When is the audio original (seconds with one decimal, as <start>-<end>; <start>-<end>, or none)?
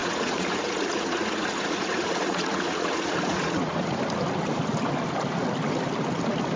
4.0-6.6